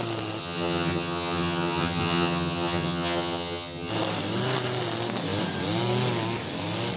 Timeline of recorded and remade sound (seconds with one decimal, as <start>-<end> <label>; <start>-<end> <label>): 0.0-0.4 recorded; 0.4-3.9 remade; 3.9-7.0 recorded